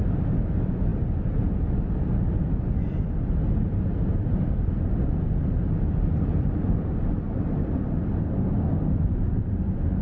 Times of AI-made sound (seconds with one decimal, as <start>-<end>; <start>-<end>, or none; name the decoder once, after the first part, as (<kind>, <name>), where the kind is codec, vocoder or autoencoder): none